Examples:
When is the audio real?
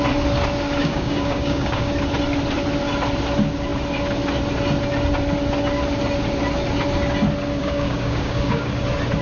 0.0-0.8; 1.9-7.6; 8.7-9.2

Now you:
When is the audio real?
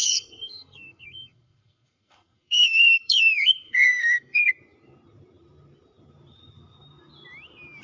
4.5-7.8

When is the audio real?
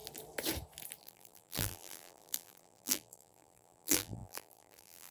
0.0-1.0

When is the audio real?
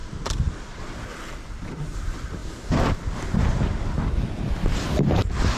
0.0-1.0; 2.4-4.3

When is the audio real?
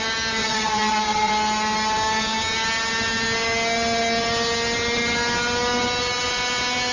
0.0-0.4; 1.3-6.9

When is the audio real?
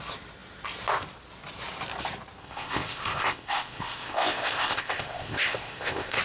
0.0-2.4